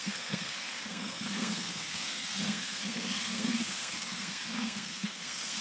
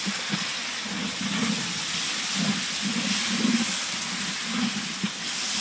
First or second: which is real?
second